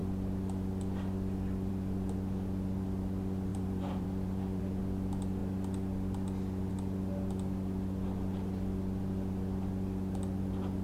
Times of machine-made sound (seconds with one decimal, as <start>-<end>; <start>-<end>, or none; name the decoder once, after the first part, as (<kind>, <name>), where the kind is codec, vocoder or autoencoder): 3.5-4.8 (vocoder, BigVGAN v2)

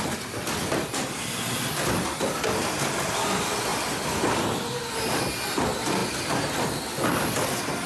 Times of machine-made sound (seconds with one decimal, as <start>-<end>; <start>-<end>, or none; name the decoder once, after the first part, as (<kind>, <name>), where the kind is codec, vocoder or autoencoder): none